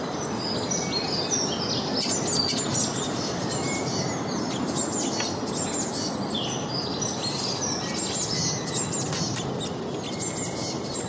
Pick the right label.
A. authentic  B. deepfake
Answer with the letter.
A